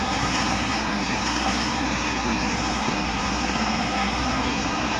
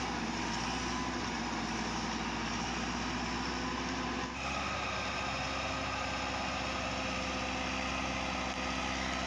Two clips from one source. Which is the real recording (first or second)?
second